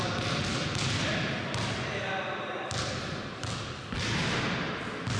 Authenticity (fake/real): real